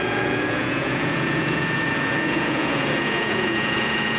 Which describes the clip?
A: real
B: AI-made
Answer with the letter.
B